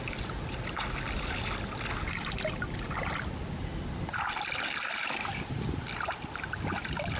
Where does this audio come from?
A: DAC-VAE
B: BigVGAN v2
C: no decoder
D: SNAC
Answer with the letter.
C